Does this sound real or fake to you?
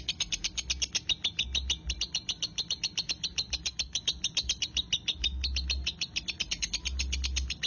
real